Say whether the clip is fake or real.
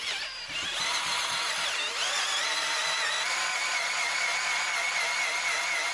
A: real